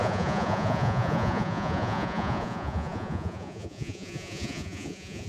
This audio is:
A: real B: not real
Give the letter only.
B